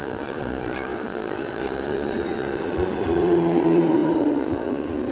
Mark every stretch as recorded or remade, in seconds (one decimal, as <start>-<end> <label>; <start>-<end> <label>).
0.0-5.1 remade